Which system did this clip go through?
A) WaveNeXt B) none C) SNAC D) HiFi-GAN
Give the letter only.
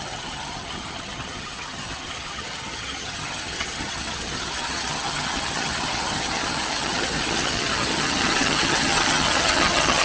D